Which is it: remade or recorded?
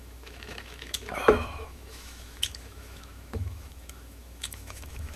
remade